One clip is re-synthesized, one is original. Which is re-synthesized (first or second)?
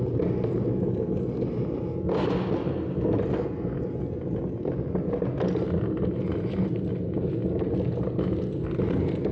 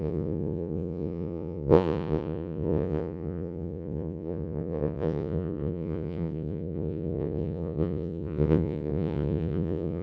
second